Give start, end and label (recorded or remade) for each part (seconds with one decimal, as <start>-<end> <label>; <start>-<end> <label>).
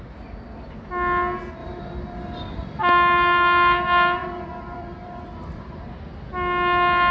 0.0-1.6 recorded; 1.6-2.8 remade; 2.8-4.2 recorded; 4.2-5.8 remade; 5.8-7.1 recorded